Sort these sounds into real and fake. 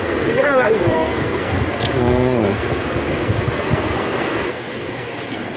fake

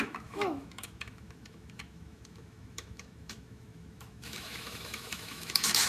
fake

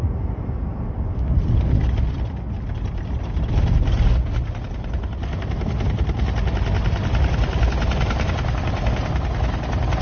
real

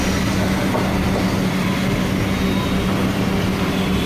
real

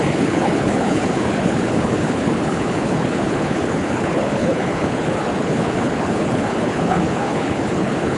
fake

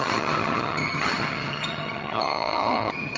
fake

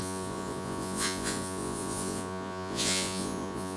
fake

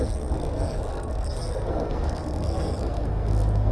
fake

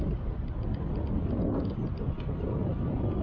real